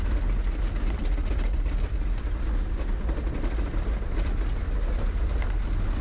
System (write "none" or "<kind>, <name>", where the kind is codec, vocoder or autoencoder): none